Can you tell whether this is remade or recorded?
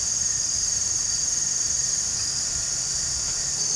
recorded